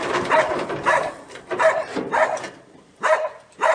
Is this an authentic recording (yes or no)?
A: no